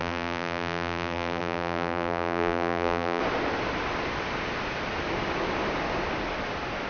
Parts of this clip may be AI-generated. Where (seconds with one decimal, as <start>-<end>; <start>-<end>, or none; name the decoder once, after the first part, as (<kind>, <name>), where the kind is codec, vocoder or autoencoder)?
0.0-3.2 (vocoder, BigVGAN v2)